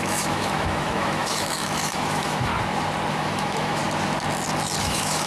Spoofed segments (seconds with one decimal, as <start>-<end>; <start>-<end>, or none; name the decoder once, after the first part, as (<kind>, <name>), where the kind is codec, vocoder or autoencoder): 0.0-2.5 (autoencoder, DAC-VAE); 3.1-3.8; 4.8-5.3